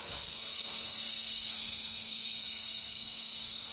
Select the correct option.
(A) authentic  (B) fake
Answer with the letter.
B